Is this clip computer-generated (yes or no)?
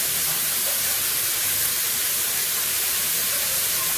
yes